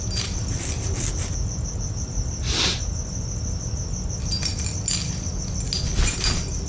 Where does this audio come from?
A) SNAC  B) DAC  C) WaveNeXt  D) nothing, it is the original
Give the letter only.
D